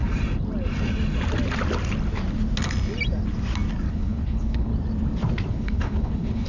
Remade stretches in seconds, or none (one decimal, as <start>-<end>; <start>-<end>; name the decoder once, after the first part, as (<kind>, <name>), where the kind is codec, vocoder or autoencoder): 3.9-4.7 (codec, HILCodec); 5.5-6.5